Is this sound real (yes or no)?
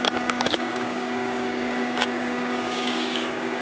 no